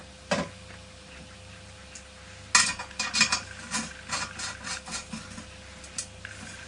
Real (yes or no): yes